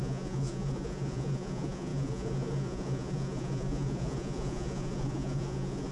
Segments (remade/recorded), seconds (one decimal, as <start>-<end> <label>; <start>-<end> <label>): 0.0-5.9 remade